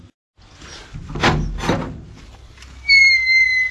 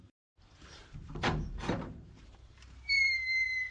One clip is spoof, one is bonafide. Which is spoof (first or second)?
second